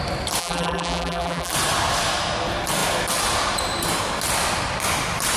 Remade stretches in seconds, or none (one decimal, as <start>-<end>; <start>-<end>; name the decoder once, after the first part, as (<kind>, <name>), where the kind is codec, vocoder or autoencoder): 0.4-1.5 (vocoder, BigVGAN v2)